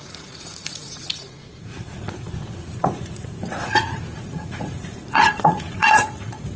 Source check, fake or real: fake